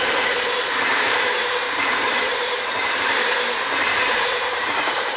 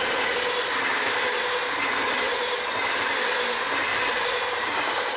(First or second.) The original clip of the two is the second